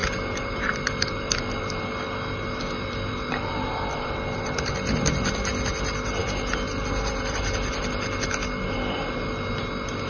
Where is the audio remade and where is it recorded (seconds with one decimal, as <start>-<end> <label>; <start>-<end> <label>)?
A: 0.0-5.1 remade; 5.1-6.2 recorded; 6.2-7.8 remade; 7.8-10.1 recorded